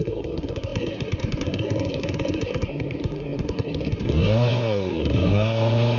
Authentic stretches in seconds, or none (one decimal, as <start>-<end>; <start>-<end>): none